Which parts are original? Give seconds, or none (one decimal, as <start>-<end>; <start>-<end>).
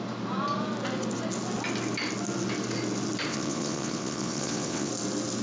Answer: 0.0-3.3; 4.9-5.4